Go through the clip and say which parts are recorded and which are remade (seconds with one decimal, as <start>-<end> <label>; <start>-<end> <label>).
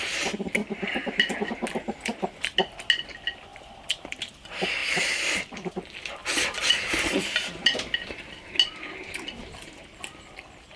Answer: 0.0-0.6 recorded; 0.6-1.5 remade; 1.5-3.5 recorded; 3.5-4.3 remade; 4.3-4.8 recorded; 4.8-5.7 remade; 5.7-6.2 recorded; 6.2-6.7 remade; 6.7-10.8 recorded